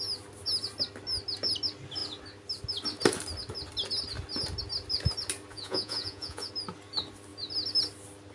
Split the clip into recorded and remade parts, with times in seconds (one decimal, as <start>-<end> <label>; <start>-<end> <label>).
0.0-5.5 recorded; 5.5-6.5 remade; 6.5-8.3 recorded